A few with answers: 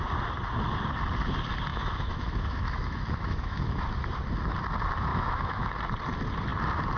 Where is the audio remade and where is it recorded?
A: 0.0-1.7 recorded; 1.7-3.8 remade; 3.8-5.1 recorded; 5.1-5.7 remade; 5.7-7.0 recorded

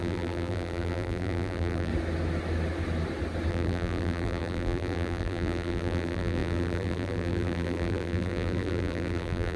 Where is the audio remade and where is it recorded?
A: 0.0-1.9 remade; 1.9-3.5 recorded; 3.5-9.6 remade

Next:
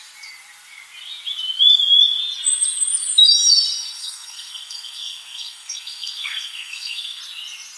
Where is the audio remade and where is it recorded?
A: 0.0-4.0 recorded; 4.0-7.2 remade; 7.2-7.8 recorded